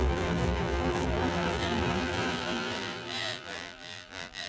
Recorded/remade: remade